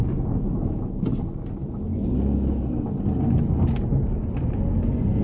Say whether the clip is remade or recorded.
recorded